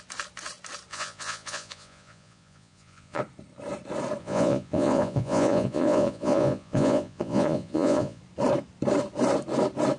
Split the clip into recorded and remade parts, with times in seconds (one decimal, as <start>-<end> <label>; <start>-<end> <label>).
0.0-0.9 recorded; 0.9-3.2 remade; 3.2-4.2 recorded; 4.2-8.2 remade; 8.2-10.0 recorded